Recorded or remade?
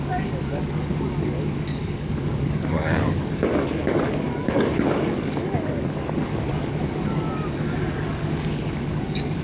remade